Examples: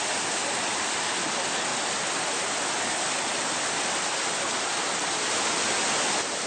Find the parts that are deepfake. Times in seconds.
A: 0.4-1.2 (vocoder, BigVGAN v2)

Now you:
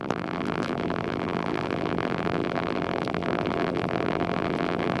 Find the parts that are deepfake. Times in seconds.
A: 0.0-5.0 (vocoder, BigVGAN v2)

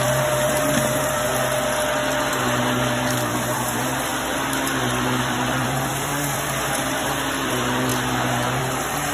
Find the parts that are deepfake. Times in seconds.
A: 0.0-1.3 (vocoder, BigVGAN v2); 2.3-7.9; 8.6-9.1

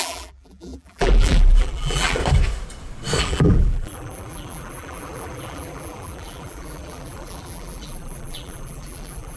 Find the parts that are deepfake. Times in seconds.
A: 0.0-2.2 (vocoder, BigVGAN v2); 3.2-9.4